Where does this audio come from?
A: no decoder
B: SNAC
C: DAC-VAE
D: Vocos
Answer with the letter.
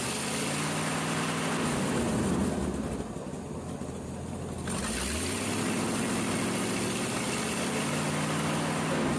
A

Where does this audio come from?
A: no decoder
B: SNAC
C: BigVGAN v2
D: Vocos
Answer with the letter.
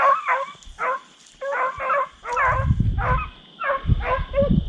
A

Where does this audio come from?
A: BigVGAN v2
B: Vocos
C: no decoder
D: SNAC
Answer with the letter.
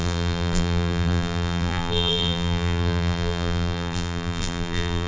A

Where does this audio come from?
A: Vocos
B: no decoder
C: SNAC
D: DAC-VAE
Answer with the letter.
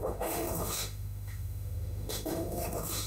D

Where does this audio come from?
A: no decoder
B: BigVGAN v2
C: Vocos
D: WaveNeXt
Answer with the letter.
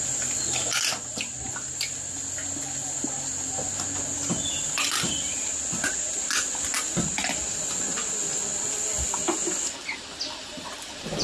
A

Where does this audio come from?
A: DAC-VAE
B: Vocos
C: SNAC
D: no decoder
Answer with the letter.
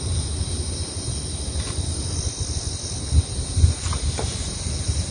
D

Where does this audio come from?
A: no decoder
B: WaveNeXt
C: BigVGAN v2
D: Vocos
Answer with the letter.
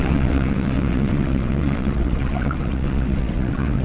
B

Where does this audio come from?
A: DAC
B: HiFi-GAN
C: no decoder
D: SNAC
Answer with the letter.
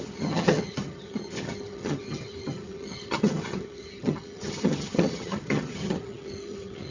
B